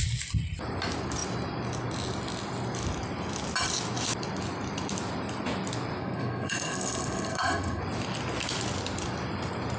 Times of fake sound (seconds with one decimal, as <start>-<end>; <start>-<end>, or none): 6.0-7.8